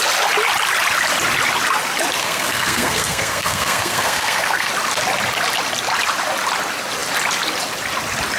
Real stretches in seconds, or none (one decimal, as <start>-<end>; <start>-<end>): 0.0-2.2; 4.7-8.4